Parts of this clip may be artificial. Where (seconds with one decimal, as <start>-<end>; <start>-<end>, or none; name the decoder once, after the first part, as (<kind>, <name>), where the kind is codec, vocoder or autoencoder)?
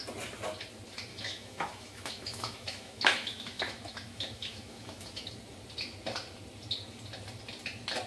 1.1-5.3 (autoencoder, DAC-VAE)